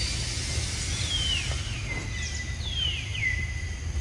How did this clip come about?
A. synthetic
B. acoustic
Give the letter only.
B